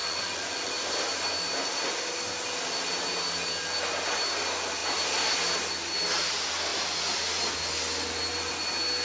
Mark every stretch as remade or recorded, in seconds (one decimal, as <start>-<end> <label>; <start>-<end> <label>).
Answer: 0.0-0.7 remade; 0.7-9.0 recorded